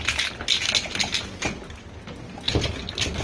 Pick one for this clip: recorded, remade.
recorded